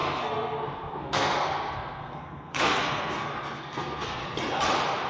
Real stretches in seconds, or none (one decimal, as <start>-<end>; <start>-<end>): 4.2-5.1